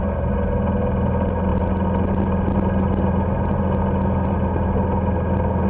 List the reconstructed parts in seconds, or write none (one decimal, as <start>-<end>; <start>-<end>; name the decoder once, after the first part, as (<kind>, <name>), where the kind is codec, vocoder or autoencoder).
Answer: none